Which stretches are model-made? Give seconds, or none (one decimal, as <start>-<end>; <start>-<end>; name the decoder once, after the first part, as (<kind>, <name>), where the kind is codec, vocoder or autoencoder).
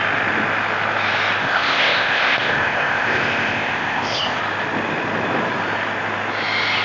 1.4-4.4 (codec, ZipCodec)